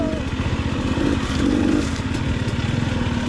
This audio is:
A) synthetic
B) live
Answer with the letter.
B